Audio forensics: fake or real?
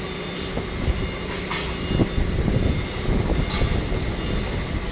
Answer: real